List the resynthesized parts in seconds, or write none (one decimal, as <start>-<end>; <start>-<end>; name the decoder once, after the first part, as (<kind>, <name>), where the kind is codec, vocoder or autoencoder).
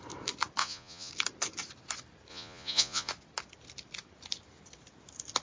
0.6-1.1 (vocoder, Vocos); 2.3-3.1